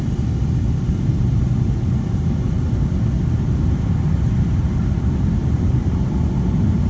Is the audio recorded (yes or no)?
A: yes